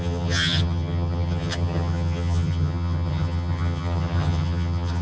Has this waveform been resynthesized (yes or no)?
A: yes